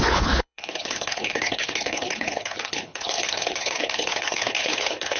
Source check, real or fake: fake